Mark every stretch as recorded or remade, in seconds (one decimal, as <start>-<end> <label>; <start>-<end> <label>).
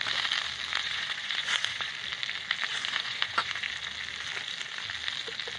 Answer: 0.0-0.7 recorded; 0.7-1.9 remade; 1.9-2.7 recorded; 2.7-3.7 remade; 3.7-5.6 recorded